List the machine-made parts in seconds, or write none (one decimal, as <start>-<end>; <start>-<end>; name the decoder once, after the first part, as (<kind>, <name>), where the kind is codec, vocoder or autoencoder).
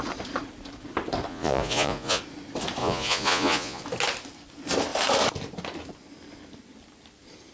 1.3-2.2 (vocoder, Vocos); 2.8-3.8